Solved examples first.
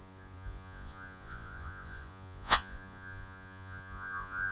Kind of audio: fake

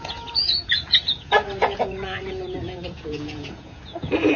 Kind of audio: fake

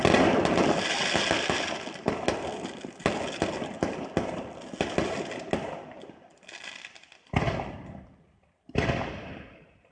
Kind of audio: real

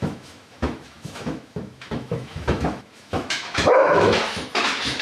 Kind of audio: fake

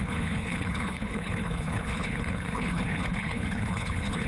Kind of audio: fake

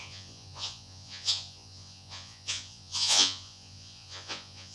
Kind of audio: fake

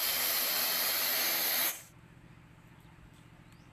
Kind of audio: real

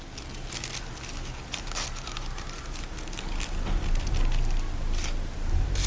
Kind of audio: real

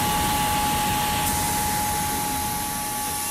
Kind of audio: real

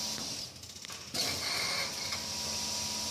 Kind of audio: real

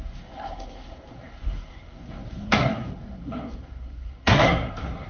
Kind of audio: fake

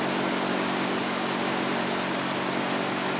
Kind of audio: real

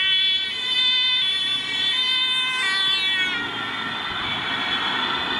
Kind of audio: real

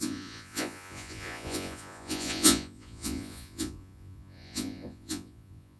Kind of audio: fake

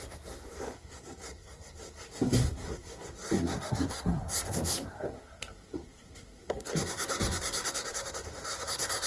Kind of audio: fake